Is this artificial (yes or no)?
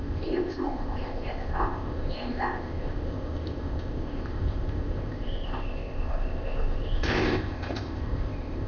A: yes